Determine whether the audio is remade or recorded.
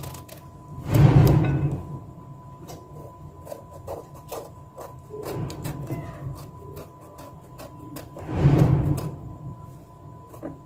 recorded